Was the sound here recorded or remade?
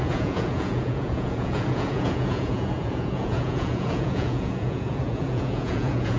remade